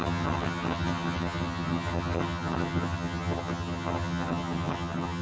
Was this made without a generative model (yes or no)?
no